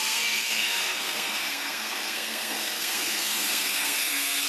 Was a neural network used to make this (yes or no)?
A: yes